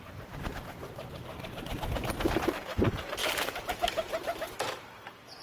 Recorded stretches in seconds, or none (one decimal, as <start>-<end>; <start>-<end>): 0.8-2.2